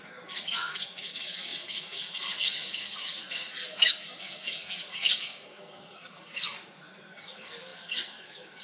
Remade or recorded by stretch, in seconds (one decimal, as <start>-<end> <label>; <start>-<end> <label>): 0.0-8.6 remade